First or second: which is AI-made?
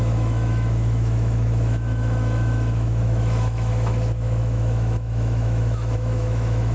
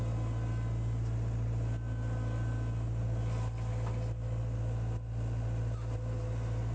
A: first